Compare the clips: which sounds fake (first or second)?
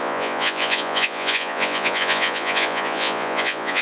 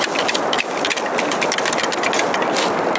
first